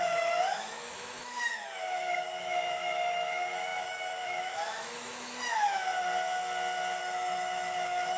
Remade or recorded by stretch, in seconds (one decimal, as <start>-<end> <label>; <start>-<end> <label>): 0.0-5.9 remade; 5.9-7.0 recorded; 7.0-8.2 remade